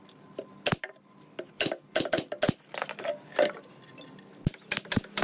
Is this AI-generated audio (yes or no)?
no